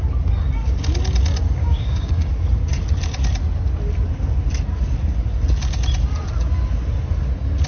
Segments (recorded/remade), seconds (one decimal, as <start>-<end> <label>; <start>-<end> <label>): 0.0-1.6 recorded; 1.6-2.3 remade; 2.3-7.7 recorded